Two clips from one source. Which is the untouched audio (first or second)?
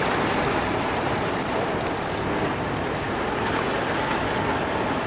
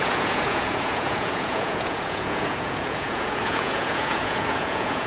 first